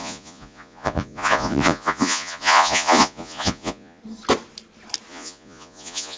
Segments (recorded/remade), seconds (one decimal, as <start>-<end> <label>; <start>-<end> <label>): 0.0-4.0 remade; 4.0-5.1 recorded; 5.1-6.2 remade